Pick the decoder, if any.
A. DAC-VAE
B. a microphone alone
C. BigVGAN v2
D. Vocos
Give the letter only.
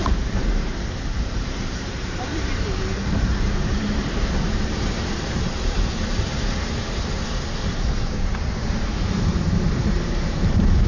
C